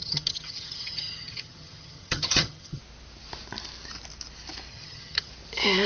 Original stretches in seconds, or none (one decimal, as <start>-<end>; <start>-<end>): 2.8-4.7; 5.3-5.9